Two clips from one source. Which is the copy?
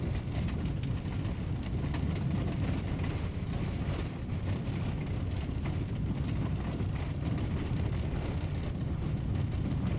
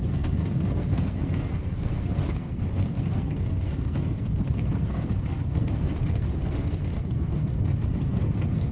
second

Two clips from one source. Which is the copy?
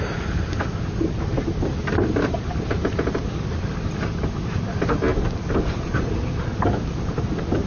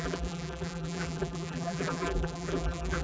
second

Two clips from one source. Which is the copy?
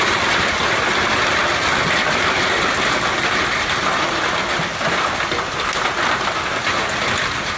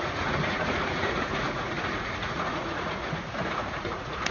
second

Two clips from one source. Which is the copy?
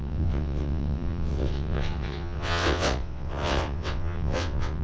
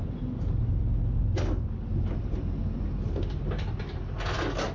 first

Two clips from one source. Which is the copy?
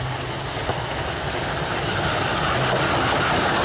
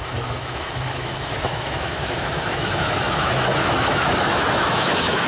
second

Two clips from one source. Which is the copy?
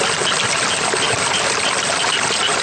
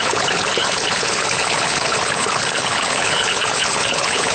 second